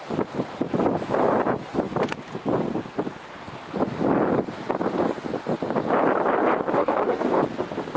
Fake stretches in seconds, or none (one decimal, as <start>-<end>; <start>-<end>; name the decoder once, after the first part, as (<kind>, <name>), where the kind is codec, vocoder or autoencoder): 6.8-7.4 (codec, DAC)